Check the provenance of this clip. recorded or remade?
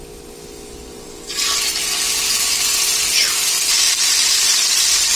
recorded